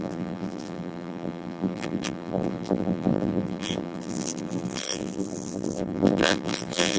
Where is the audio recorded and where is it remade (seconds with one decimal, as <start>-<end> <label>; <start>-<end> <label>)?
0.0-7.0 remade